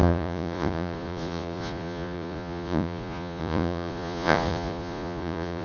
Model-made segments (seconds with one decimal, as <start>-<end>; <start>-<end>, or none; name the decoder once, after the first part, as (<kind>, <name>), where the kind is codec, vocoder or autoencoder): 0.0-5.6 (vocoder, Vocos)

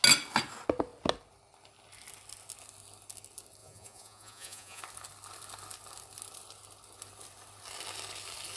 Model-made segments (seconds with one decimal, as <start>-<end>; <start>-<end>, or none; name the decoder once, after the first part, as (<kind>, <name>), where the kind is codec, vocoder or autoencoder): 3.6-4.8 (vocoder, Vocos)

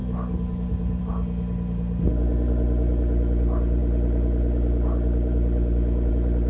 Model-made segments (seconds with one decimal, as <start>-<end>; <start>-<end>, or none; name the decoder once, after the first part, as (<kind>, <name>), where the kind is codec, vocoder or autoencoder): none

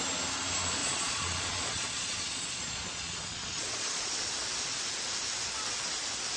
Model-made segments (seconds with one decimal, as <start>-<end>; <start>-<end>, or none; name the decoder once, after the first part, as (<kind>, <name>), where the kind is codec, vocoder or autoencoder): 0.8-4.3 (vocoder, Vocos)

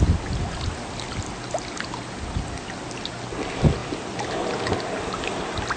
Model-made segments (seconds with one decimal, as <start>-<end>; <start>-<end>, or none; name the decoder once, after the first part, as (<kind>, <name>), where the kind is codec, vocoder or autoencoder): none

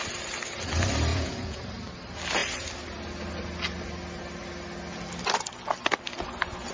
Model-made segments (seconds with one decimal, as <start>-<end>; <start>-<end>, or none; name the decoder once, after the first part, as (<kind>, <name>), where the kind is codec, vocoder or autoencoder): 1.1-1.6 (vocoder, Vocos)